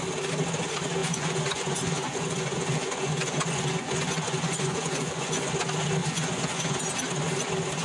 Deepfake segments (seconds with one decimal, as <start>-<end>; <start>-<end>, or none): 1.0-5.5; 6.0-6.8